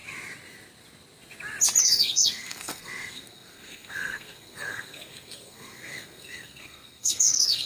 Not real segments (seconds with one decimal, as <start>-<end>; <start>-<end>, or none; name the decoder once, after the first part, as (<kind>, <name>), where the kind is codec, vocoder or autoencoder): 1.8-7.7 (codec, SNAC)